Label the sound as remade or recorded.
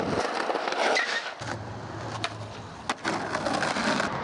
recorded